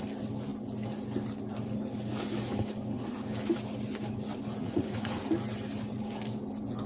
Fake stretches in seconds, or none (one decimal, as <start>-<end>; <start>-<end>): 4.6-5.2

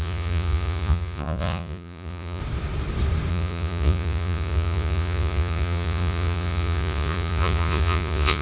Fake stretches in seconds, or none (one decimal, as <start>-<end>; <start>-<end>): 0.0-2.4; 3.3-8.4

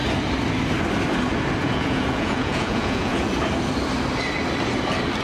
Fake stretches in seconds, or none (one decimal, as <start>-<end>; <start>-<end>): 1.6-3.3

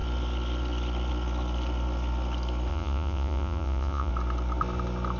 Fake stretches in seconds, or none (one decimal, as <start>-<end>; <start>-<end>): 2.7-4.1

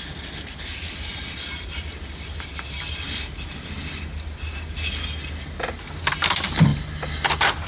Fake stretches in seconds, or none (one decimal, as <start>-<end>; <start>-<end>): none